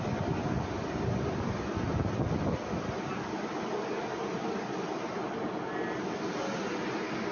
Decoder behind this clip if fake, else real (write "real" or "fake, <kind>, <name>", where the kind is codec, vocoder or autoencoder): real